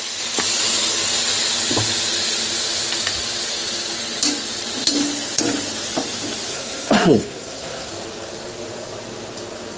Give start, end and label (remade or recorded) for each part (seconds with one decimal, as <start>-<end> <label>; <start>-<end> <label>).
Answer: 0.0-6.5 recorded; 6.5-7.9 remade; 7.9-9.8 recorded